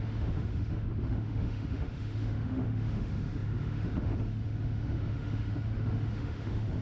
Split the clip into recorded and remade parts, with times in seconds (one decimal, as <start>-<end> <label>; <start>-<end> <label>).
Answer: 0.0-6.8 remade